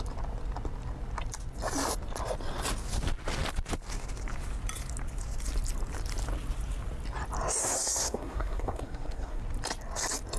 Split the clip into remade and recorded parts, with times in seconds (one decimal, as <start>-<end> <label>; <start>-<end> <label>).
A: 0.0-7.6 recorded; 7.6-9.4 remade; 9.4-10.4 recorded